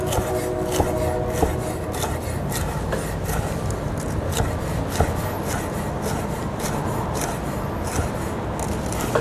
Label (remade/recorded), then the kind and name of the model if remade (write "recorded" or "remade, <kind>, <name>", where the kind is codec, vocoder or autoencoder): recorded